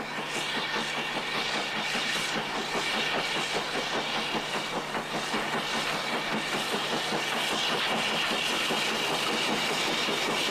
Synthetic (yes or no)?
no